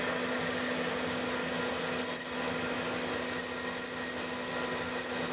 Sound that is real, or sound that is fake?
real